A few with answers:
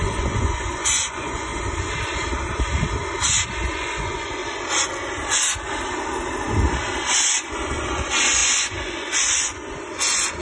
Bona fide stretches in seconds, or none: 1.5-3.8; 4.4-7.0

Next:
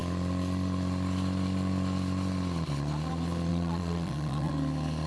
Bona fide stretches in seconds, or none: 0.0-3.5; 4.5-5.1

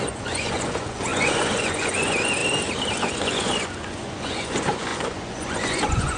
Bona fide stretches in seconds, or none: 2.4-3.0

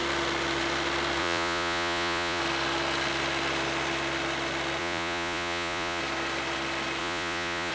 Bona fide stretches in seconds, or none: 0.0-1.2; 2.4-4.8; 6.0-7.0

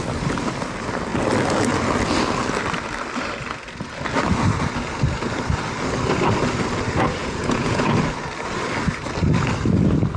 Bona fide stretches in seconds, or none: 0.0-7.2; 7.8-10.2

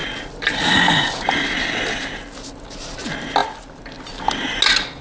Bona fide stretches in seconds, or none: 0.0-5.0